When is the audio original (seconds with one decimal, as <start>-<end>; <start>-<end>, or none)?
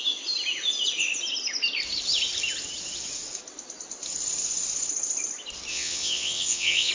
0.0-5.7